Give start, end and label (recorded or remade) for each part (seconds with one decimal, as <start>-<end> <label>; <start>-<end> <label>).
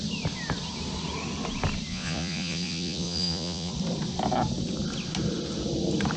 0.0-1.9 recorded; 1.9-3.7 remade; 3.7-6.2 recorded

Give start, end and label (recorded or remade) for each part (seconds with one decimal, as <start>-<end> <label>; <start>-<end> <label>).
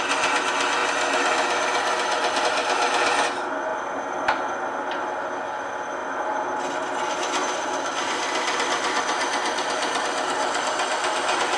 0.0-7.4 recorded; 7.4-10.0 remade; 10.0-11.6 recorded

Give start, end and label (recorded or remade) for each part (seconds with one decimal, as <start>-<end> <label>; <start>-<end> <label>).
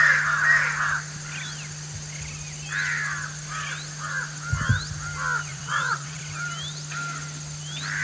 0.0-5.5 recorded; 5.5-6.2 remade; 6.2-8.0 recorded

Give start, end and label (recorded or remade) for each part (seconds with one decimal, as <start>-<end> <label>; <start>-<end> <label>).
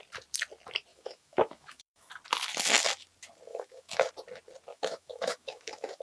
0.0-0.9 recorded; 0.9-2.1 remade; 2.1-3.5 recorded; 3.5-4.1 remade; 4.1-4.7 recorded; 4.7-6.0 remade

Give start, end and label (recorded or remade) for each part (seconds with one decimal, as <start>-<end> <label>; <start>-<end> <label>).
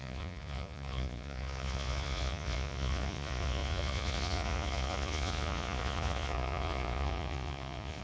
0.0-8.0 remade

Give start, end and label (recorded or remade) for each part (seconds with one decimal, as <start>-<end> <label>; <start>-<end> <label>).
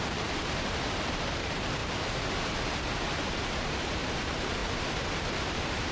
0.0-1.8 remade; 1.8-3.2 recorded; 3.2-4.6 remade; 4.6-5.2 recorded; 5.2-5.9 remade